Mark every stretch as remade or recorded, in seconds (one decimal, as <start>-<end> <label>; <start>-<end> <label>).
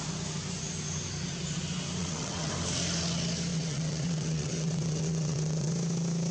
0.0-2.0 recorded; 2.0-2.5 remade; 2.5-3.5 recorded; 3.5-5.7 remade; 5.7-6.3 recorded